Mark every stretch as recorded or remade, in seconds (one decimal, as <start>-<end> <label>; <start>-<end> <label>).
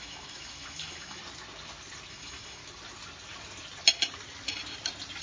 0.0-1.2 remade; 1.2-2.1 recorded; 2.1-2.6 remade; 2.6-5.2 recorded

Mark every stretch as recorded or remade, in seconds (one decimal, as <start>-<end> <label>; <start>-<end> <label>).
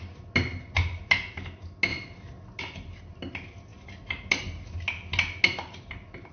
0.0-6.3 recorded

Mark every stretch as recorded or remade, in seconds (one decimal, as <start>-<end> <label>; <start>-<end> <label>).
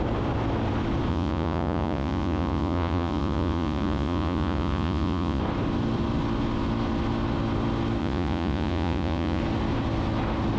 0.0-1.1 recorded; 1.1-5.4 remade; 5.4-8.0 recorded; 8.0-9.4 remade; 9.4-10.6 recorded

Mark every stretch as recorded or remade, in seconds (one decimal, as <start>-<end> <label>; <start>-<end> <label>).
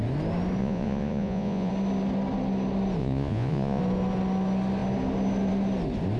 0.0-0.6 recorded; 0.6-1.7 remade; 1.7-3.0 recorded; 3.0-3.8 remade; 3.8-6.2 recorded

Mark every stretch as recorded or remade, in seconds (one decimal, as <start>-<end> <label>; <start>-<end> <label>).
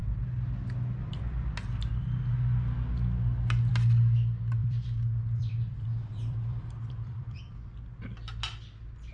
0.0-4.6 recorded; 4.6-7.4 remade; 7.4-9.1 recorded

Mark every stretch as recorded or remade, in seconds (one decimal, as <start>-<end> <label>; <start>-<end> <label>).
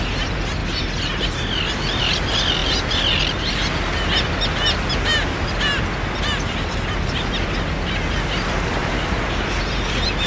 0.0-8.8 recorded; 8.8-9.9 remade; 9.9-10.3 recorded